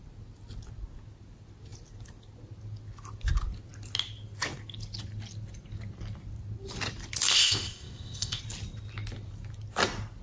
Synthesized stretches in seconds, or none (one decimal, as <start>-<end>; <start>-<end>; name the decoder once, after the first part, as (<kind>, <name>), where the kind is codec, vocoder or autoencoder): 7.3-8.4 (codec, ZipCodec)

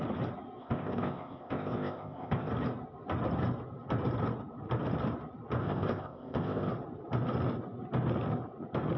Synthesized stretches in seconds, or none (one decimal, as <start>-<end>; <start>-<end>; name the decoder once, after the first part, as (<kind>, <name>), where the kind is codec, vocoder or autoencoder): 0.6-2.5 (codec, ZipCodec); 5.6-6.7

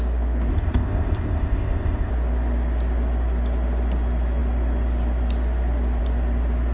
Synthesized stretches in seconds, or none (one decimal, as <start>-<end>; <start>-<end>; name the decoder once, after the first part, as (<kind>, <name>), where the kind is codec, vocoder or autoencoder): 0.5-2.1 (codec, ZipCodec)